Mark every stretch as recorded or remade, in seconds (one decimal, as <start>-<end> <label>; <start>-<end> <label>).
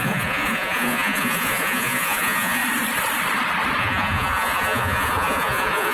0.0-2.6 remade; 2.6-3.8 recorded; 3.8-5.9 remade